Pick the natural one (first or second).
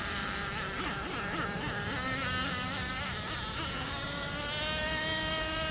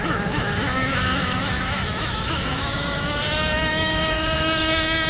first